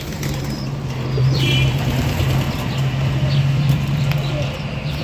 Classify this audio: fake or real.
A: fake